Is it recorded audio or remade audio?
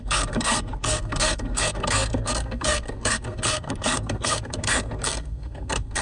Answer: remade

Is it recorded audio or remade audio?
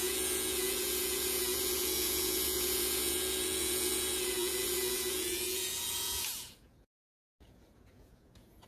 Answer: remade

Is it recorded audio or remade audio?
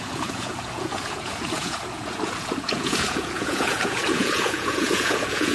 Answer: remade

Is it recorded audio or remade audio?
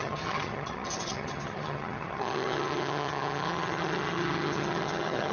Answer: remade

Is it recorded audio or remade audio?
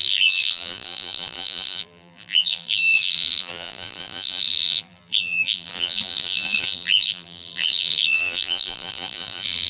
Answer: remade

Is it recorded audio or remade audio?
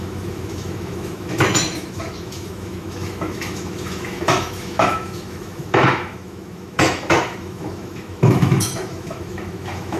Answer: remade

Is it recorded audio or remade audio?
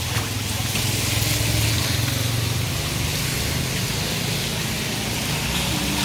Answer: recorded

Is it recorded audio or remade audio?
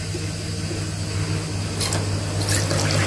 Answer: recorded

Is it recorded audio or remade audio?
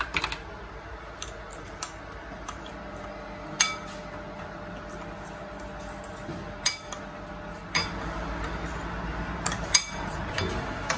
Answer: recorded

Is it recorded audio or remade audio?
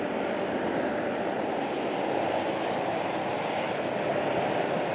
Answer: remade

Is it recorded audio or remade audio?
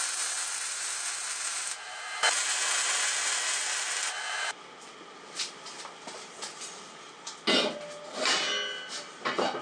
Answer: recorded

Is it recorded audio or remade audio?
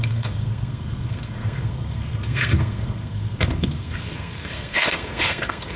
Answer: remade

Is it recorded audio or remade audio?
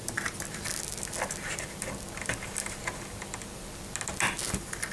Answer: recorded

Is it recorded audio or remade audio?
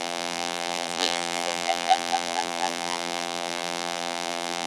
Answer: remade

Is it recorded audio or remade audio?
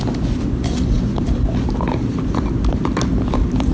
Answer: recorded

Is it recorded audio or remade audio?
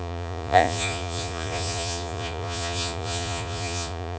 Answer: remade